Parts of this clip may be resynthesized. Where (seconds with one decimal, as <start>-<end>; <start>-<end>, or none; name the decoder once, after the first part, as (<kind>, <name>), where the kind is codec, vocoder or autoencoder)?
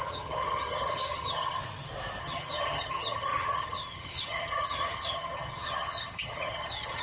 0.0-1.6 (vocoder, HiFi-GAN); 2.2-7.0